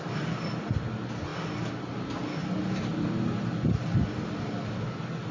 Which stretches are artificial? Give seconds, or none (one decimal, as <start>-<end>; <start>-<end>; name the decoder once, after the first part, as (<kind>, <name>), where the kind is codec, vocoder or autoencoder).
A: none